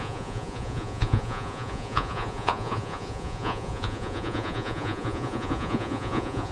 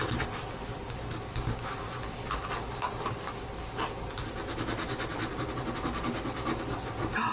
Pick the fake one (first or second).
first